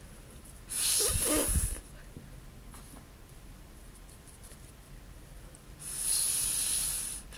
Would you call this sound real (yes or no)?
yes